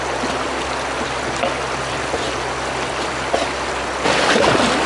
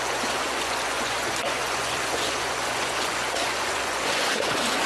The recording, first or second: first